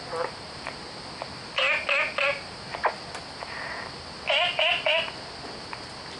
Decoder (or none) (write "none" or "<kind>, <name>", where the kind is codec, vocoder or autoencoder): none